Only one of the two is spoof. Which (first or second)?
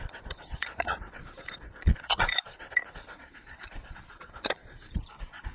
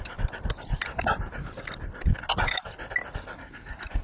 first